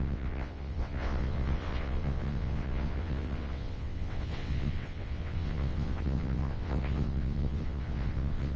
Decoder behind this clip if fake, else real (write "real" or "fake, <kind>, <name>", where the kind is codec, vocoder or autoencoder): fake, vocoder, WaveNeXt